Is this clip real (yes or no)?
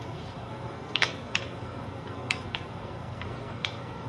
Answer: no